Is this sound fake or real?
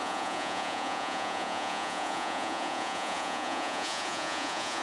fake